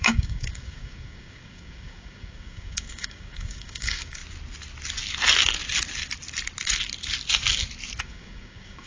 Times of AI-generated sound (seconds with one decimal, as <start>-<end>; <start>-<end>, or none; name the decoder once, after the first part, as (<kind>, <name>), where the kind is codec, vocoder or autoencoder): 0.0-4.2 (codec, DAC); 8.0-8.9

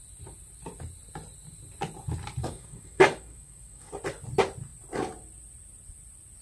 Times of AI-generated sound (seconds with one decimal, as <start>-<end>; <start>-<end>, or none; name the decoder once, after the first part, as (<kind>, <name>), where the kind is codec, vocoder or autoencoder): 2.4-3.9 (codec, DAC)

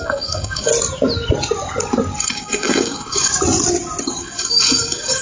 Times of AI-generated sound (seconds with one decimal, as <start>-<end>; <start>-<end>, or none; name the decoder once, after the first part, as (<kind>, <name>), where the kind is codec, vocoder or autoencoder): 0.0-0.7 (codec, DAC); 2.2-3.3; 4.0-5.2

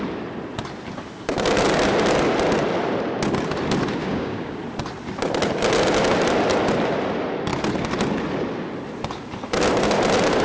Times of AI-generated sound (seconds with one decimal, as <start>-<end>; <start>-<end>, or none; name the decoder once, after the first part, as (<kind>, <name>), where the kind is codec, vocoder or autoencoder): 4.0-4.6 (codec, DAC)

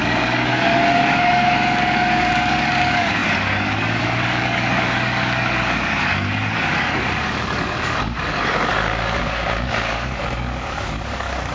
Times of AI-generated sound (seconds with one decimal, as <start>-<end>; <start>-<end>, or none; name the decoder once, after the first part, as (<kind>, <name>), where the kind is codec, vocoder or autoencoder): 0.0-11.5 (codec, DAC)

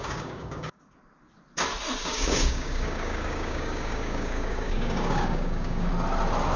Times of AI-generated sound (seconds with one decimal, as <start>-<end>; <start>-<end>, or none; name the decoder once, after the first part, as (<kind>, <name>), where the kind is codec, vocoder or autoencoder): 0.0-0.8 (codec, DAC); 2.0-5.9